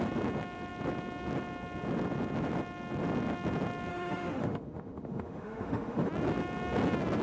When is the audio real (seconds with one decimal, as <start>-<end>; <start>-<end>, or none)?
0.0-3.9; 6.1-7.2